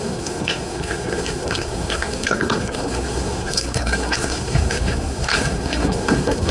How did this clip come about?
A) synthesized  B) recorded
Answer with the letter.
A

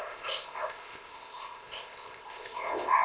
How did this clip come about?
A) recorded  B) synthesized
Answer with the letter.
B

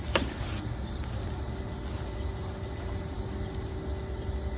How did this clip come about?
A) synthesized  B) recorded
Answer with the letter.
B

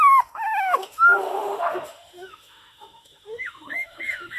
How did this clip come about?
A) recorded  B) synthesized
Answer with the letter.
B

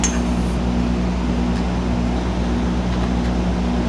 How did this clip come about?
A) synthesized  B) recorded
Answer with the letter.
B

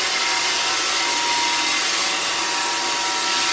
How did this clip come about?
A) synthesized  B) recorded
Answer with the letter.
B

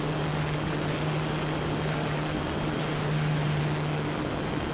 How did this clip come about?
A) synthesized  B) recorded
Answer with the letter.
B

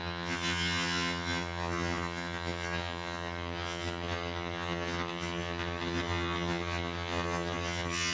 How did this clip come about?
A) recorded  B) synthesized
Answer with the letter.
B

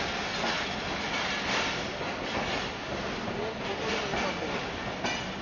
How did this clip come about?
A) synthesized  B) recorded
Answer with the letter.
B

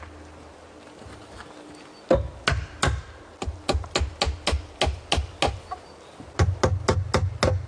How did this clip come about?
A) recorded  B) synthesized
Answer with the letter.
A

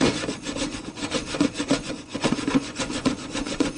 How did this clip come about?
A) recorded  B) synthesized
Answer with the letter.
B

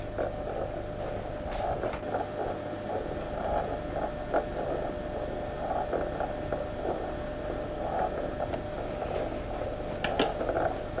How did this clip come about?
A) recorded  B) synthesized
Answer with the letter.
A